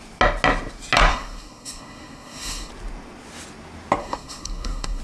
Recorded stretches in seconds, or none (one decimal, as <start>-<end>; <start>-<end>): 0.0-1.1; 2.7-4.0